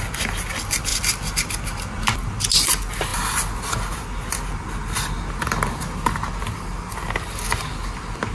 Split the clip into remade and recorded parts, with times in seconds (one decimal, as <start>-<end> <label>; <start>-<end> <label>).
0.0-8.3 recorded